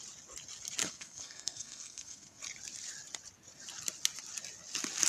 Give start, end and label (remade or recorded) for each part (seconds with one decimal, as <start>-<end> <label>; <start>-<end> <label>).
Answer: 0.0-0.8 recorded; 0.8-2.4 remade; 2.4-5.1 recorded